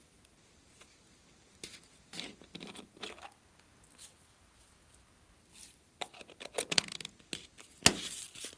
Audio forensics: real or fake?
real